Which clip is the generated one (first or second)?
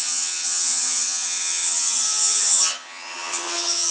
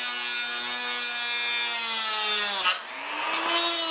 first